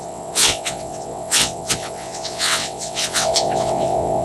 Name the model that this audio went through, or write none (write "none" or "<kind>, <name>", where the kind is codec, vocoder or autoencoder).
vocoder, WaveNeXt